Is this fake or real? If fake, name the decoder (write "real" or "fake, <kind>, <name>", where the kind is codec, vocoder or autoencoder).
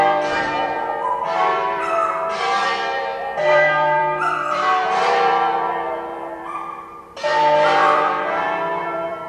fake, vocoder, BigVGAN v2